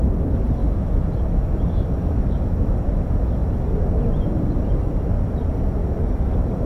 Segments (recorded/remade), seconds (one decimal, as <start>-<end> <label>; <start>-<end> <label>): 0.0-0.6 recorded; 0.6-3.0 remade; 3.0-5.8 recorded; 5.8-6.3 remade; 6.3-6.7 recorded